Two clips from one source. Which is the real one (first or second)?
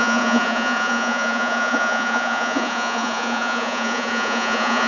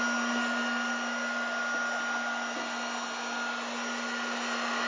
second